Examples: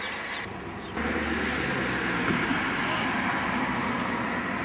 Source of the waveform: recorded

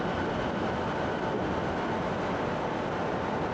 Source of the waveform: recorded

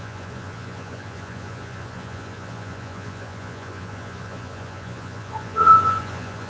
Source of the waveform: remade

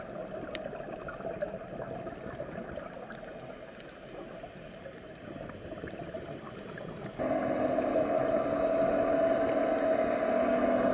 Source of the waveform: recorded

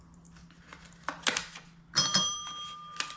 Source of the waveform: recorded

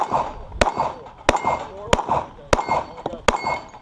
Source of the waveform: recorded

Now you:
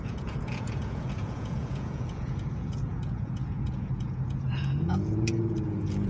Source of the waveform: remade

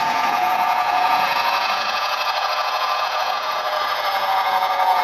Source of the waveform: remade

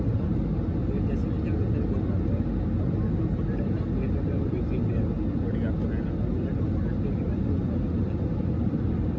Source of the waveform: recorded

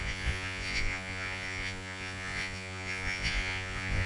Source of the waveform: remade